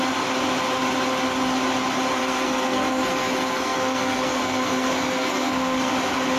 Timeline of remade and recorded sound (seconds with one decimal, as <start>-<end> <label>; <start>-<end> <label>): 0.0-2.2 recorded; 2.2-5.9 remade; 5.9-6.4 recorded